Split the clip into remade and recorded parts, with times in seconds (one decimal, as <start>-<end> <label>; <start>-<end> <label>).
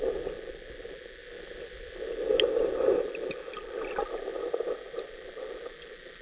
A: 0.0-1.2 recorded; 1.2-2.1 remade; 2.1-4.3 recorded; 4.3-5.3 remade; 5.3-6.2 recorded